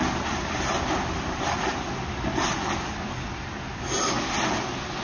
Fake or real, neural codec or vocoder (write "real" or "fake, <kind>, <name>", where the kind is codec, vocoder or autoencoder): real